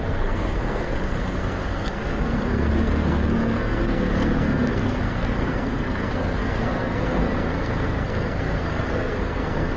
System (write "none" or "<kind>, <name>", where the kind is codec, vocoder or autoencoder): codec, SNAC